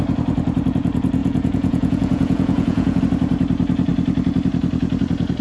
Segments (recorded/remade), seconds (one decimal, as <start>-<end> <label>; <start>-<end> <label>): 0.0-1.2 recorded; 1.2-3.0 remade; 3.0-5.4 recorded